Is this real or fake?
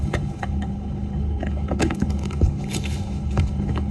fake